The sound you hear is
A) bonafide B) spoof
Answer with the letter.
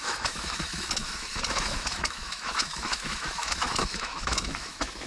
B